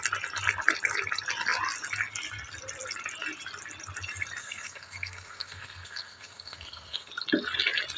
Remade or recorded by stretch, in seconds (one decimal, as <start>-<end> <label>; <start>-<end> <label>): 0.0-4.4 recorded; 4.4-7.1 remade; 7.1-8.0 recorded